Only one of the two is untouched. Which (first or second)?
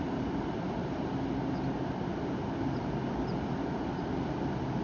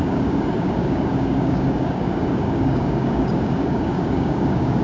first